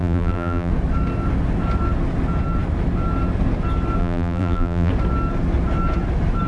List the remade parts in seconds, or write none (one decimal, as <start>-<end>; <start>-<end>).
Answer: 0.0-0.7; 4.0-4.9